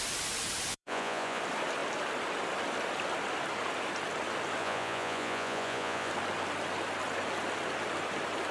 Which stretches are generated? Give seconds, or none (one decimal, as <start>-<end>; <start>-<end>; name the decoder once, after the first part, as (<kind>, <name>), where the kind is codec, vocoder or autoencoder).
0.7-1.4 (vocoder, Vocos); 4.6-6.1